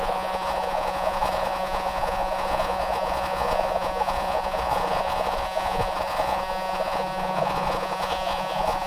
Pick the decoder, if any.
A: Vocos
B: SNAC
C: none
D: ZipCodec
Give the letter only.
A